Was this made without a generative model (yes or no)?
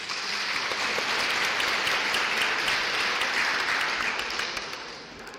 yes